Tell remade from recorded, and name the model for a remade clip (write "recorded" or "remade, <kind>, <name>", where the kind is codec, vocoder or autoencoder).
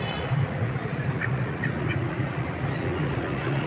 remade, vocoder, Vocos